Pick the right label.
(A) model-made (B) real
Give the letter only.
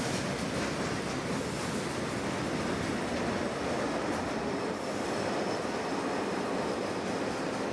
B